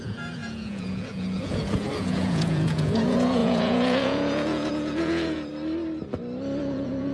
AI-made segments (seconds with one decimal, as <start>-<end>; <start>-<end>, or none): 0.0-5.5; 6.6-7.1